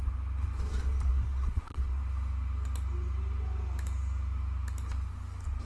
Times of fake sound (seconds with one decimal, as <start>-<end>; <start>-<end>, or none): 1.1-2.0